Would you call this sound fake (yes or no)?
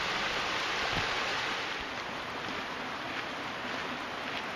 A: no